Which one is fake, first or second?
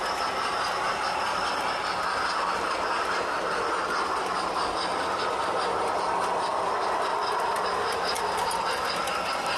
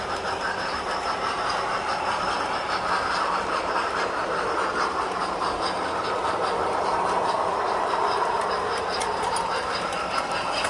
second